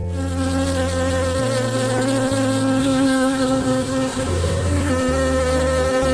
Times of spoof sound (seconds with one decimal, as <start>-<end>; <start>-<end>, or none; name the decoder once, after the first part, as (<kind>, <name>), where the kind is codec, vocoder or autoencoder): 2.8-4.9 (codec, SNAC)